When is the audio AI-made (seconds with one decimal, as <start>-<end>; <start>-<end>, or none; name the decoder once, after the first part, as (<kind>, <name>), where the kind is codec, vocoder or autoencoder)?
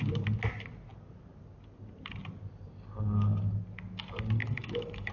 4.4-5.1 (autoencoder, DAC-VAE)